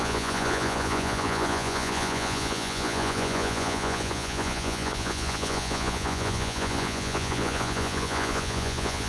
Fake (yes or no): yes